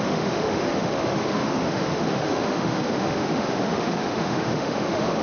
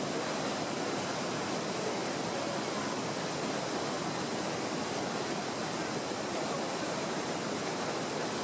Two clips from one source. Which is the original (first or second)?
second